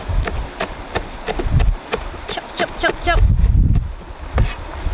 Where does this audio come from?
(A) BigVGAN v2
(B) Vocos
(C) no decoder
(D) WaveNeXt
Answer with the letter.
C